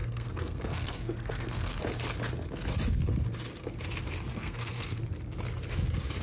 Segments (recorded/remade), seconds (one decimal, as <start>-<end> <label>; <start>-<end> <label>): 0.0-1.8 remade; 1.8-4.3 recorded; 4.3-5.0 remade; 5.0-6.2 recorded